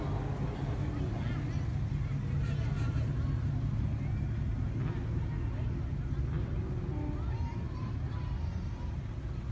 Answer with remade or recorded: recorded